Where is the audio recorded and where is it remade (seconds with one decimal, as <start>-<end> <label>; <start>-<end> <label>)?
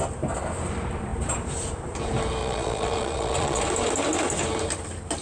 0.0-2.4 recorded; 2.4-3.6 remade; 3.6-5.2 recorded